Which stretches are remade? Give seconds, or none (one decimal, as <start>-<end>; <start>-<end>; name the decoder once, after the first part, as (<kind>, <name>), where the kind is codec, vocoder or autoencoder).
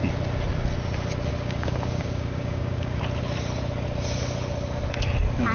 1.3-3.0 (codec, DAC)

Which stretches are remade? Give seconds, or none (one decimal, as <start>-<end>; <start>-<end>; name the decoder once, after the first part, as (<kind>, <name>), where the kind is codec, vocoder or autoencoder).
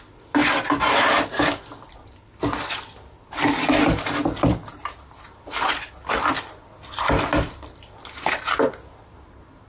0.4-2.3 (vocoder, BigVGAN v2); 4.2-8.0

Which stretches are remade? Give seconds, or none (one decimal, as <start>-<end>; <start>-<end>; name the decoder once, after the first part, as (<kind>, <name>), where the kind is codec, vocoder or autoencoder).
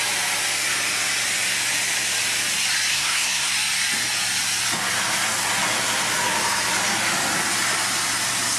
2.9-3.5 (codec, SNAC)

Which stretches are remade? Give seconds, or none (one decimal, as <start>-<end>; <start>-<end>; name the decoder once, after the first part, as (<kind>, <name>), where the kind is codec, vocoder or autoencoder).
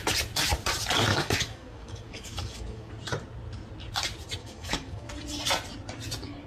1.1-2.9 (codec, DAC); 4.4-5.1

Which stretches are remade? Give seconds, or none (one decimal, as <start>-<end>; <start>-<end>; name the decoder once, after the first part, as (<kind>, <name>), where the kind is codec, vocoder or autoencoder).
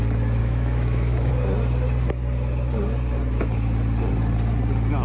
0.4-1.3 (autoencoder, DAC-VAE)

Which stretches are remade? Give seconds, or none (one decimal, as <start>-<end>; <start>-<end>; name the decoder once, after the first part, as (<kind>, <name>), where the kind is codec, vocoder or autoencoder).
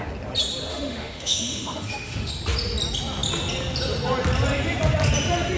0.7-2.3 (autoencoder, DAC-VAE)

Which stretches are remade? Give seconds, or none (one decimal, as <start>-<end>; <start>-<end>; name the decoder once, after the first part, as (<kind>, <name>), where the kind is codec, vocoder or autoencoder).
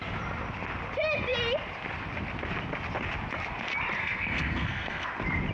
4.0-5.1 (codec, SNAC)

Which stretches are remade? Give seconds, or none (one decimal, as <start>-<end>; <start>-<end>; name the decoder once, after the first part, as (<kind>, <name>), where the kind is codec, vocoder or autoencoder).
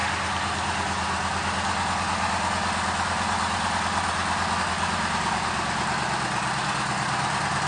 none